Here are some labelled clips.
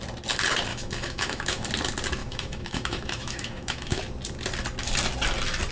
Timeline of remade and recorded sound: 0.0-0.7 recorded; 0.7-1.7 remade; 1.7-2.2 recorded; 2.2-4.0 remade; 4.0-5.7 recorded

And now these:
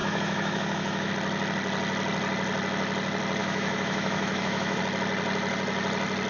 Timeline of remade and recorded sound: 0.0-1.1 remade; 1.1-3.4 recorded; 3.4-4.8 remade; 4.8-6.3 recorded